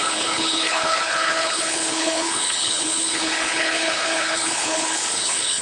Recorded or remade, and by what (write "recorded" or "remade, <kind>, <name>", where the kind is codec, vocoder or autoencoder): remade, codec, HILCodec